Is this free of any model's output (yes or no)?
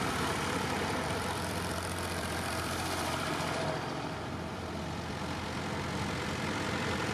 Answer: no